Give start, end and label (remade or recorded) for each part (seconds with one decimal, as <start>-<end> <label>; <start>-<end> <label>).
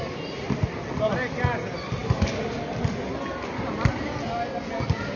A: 0.0-5.2 recorded